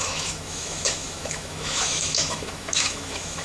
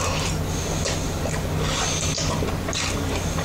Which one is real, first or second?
second